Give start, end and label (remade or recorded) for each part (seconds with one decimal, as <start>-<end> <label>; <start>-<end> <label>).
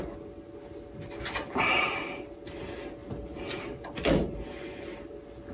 0.0-5.5 recorded